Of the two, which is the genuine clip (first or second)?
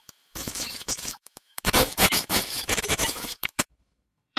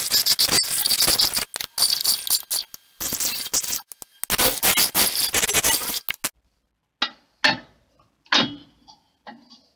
second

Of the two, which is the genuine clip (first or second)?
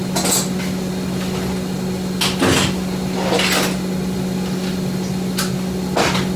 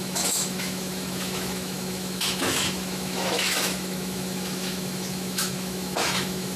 first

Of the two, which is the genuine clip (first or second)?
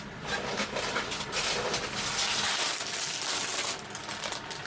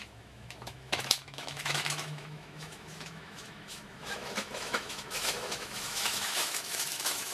first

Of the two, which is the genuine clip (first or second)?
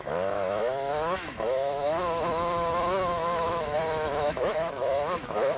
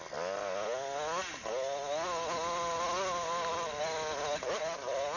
second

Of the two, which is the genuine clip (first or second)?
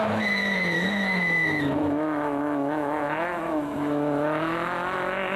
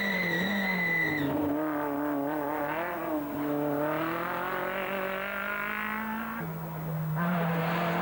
second